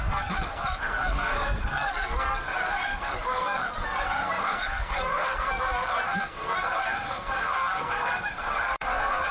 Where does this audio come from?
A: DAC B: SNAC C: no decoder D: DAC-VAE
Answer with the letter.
B